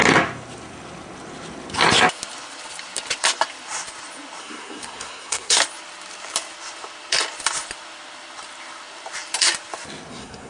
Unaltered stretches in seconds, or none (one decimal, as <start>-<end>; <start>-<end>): 0.0-4.4; 5.6-10.1